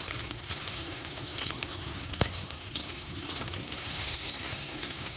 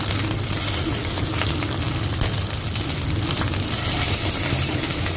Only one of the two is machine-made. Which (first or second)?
first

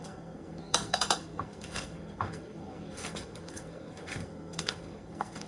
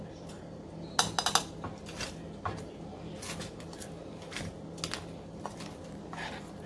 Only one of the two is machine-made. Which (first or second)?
first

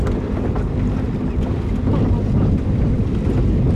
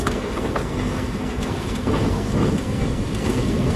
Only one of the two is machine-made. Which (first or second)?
second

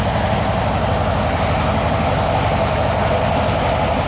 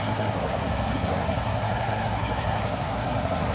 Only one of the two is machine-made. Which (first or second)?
second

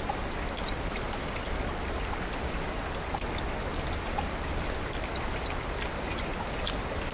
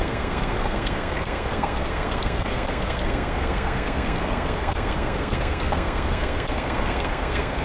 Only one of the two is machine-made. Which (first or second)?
second